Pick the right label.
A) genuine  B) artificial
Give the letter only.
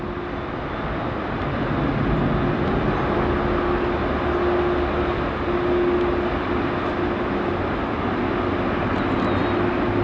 A